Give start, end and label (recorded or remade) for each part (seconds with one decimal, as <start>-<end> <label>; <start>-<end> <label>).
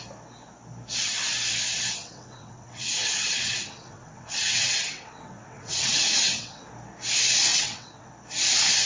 0.0-2.0 recorded; 2.0-6.7 remade; 6.7-7.5 recorded; 7.5-8.1 remade; 8.1-8.9 recorded